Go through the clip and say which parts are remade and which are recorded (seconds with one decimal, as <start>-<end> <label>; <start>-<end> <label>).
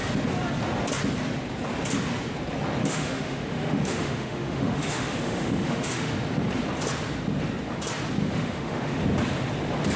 0.0-2.8 recorded; 2.8-6.1 remade; 6.1-8.2 recorded; 8.2-9.0 remade; 9.0-10.0 recorded